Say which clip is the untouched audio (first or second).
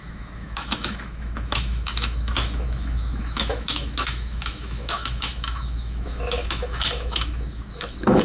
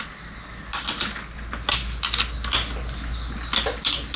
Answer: second